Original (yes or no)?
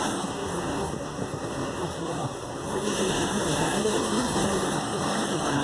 no